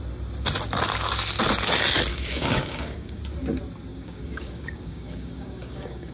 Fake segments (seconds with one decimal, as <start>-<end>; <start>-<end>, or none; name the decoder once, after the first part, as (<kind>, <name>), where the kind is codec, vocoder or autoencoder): 2.1-3.2 (codec, DAC); 3.9-6.1